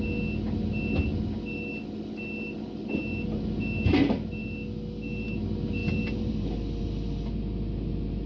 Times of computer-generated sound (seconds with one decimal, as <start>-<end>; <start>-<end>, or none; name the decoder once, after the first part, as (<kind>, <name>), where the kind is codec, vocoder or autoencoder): none